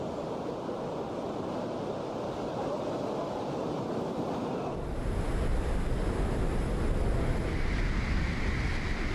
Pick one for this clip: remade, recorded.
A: recorded